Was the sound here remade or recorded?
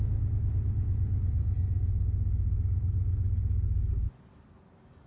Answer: recorded